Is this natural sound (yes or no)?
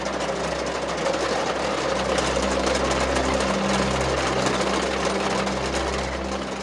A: yes